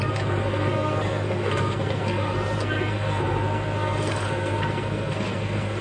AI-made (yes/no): yes